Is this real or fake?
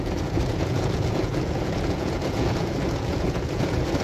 fake